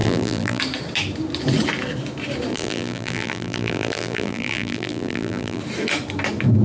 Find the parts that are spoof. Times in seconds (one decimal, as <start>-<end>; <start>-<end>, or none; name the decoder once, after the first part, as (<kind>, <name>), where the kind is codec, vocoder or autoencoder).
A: 0.0-0.6 (vocoder, BigVGAN v2); 2.5-5.6